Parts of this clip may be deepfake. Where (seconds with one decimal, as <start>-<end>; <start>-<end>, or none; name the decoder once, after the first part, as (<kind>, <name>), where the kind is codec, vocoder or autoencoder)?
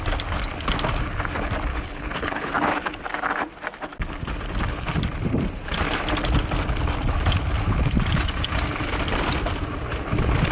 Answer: 1.7-2.5 (codec, HILCodec)